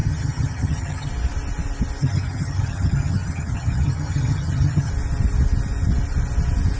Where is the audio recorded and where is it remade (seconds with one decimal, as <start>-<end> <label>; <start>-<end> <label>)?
0.0-1.1 remade; 1.1-2.0 recorded; 2.0-4.9 remade; 4.9-6.8 recorded